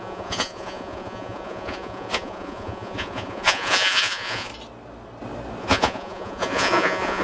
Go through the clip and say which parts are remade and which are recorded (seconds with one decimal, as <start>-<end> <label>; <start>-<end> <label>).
0.0-4.5 remade; 4.5-5.6 recorded; 5.6-7.2 remade